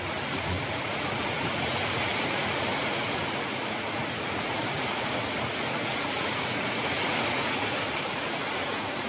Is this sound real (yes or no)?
no